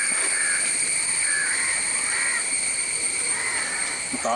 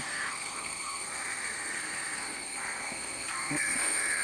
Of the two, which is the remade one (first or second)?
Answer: second